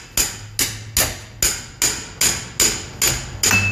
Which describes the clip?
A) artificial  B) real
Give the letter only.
B